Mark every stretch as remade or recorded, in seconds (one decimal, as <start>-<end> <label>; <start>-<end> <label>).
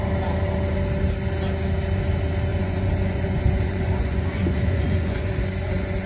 0.0-2.5 recorded; 2.5-6.1 remade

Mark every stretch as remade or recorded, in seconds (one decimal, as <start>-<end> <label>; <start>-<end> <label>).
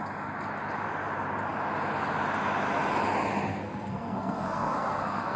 0.0-3.5 recorded; 3.5-5.4 remade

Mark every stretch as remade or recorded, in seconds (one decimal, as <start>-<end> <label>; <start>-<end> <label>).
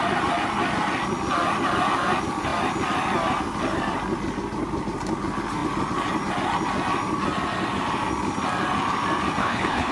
0.0-9.4 recorded; 9.4-9.9 remade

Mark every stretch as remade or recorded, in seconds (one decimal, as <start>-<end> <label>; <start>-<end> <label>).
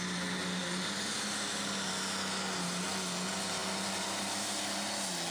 0.0-5.3 recorded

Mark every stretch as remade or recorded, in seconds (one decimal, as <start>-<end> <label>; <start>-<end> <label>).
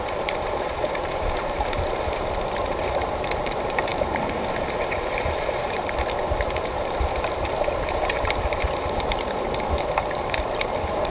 0.0-11.1 remade